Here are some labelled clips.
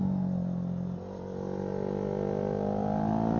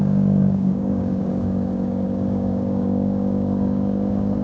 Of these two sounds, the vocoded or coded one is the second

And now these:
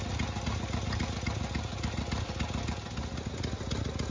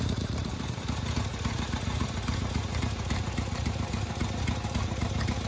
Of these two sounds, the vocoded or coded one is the second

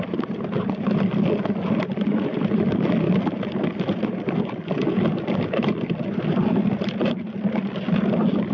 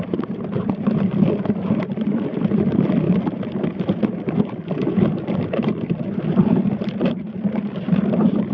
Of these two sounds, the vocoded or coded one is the second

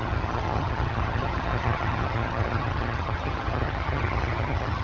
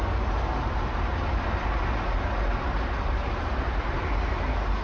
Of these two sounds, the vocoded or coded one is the first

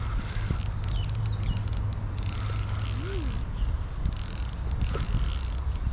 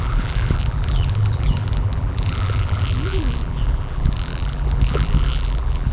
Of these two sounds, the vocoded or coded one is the second